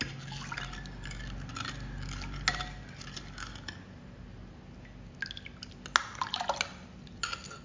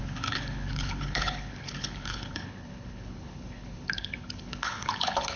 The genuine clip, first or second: first